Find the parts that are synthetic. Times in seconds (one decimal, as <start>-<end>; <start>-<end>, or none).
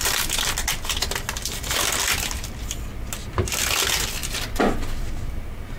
none